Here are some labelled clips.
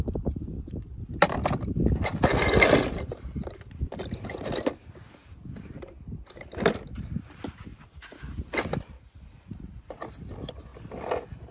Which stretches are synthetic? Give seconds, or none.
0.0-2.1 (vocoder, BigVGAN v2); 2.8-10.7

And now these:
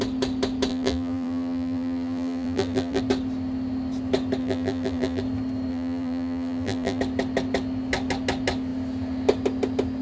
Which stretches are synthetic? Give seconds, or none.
0.7-3.0 (vocoder, BigVGAN v2); 4.4-5.2; 5.7-7.0